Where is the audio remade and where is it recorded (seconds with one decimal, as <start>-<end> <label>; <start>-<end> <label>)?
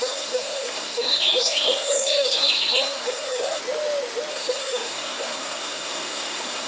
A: 0.0-3.6 remade; 3.6-4.3 recorded; 4.3-6.7 remade